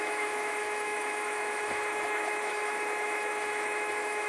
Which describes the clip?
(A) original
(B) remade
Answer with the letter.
B